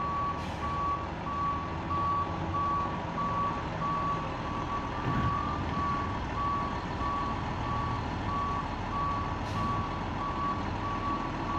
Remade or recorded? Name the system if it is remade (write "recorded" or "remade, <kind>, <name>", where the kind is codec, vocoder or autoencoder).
recorded